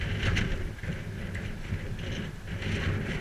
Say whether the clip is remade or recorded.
recorded